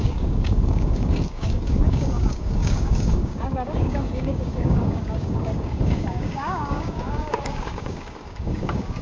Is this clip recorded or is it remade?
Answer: remade